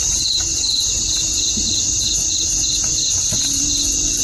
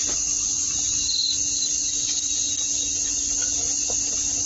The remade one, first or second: first